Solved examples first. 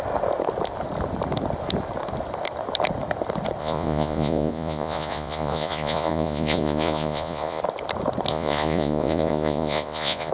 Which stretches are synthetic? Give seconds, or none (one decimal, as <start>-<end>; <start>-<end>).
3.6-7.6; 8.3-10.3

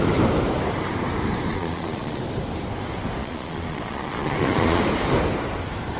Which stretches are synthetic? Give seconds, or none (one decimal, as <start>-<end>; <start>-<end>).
1.5-2.2; 3.2-4.8

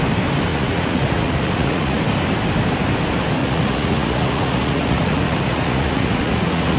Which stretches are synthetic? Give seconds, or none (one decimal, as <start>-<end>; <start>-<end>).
0.5-2.0; 3.4-6.8

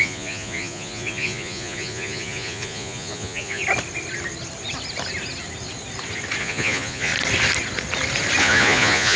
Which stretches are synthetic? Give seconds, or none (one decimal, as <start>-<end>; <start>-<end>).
0.0-3.6; 6.4-7.1; 8.4-9.2

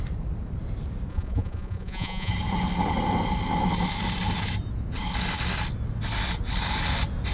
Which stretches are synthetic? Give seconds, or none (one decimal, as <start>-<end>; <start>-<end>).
1.1-2.3